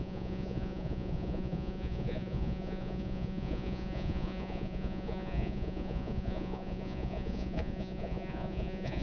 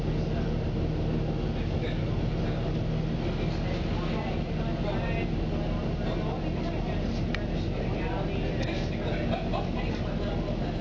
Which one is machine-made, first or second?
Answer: first